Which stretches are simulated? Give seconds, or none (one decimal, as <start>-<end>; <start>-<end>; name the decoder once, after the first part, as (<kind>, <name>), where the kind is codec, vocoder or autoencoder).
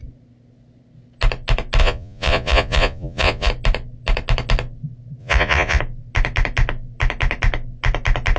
1.8-3.5 (vocoder, Vocos); 5.2-5.8